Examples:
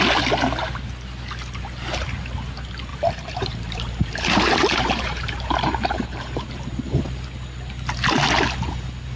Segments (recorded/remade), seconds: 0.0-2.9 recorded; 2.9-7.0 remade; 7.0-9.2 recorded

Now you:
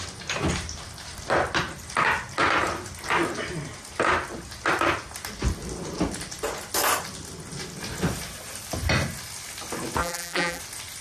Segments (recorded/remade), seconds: 0.0-10.0 recorded; 10.0-10.6 remade; 10.6-11.0 recorded

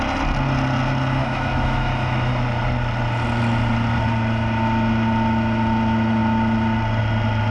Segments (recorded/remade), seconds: 0.0-1.2 recorded; 1.2-2.3 remade; 2.3-7.5 recorded

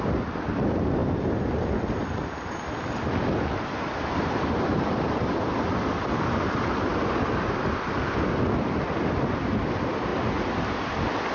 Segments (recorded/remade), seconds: 0.0-1.0 remade; 1.0-4.1 recorded; 4.1-6.9 remade; 6.9-9.4 recorded; 9.4-10.1 remade; 10.1-11.3 recorded